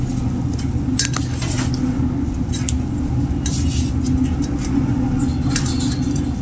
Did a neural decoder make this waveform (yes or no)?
no